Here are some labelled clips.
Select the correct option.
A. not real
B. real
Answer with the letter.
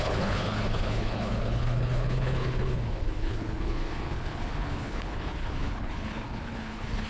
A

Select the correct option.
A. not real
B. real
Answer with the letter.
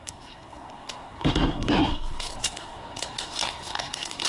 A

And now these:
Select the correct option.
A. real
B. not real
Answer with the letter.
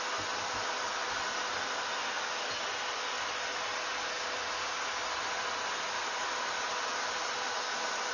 A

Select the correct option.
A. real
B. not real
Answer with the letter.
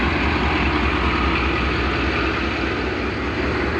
A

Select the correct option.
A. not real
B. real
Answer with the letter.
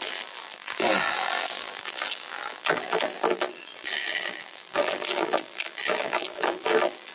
A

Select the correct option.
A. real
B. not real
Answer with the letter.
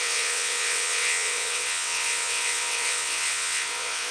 B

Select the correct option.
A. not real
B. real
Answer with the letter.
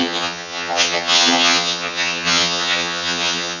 A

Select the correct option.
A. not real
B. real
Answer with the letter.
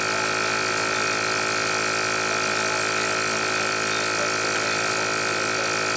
B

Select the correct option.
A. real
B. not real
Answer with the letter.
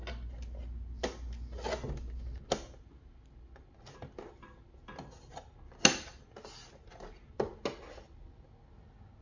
A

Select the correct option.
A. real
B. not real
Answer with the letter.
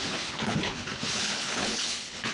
B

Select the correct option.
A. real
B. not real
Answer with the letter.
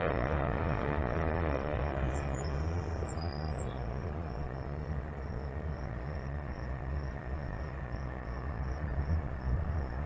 B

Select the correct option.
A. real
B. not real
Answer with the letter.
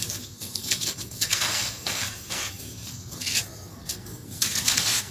B